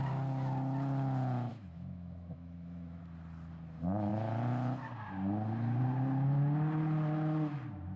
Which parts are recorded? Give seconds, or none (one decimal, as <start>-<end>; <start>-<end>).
0.0-1.5; 3.0-8.0

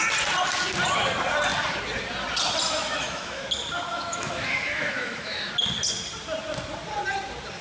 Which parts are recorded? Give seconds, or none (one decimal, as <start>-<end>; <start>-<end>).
0.0-2.6; 3.5-3.9; 5.5-7.6

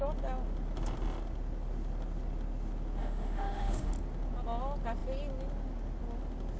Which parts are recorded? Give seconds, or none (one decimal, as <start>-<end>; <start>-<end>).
0.0-3.0; 3.9-6.6

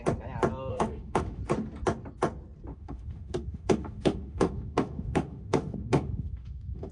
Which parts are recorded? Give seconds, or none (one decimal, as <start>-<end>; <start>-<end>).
0.0-0.7; 1.4-2.7

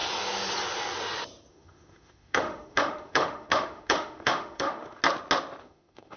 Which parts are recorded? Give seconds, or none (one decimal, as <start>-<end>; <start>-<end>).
0.0-1.5; 5.0-5.6

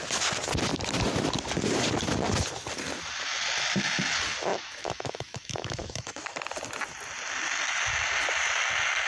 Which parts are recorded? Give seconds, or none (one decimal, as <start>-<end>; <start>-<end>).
0.0-4.5; 6.2-9.1

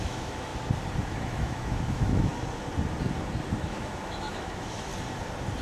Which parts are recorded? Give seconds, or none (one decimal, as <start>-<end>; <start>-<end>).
0.5-1.0; 2.3-3.6; 4.9-5.6